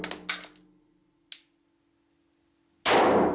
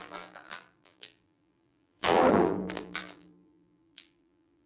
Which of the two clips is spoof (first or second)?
second